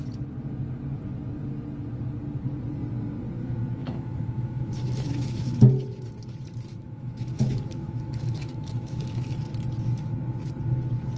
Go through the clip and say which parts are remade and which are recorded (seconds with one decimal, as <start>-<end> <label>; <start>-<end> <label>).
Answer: 0.0-3.8 recorded; 3.8-5.6 remade; 5.6-6.7 recorded; 6.7-9.4 remade; 9.4-11.2 recorded